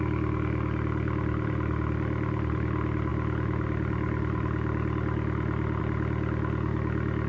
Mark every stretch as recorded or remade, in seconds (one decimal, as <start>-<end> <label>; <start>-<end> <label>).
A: 0.0-7.3 recorded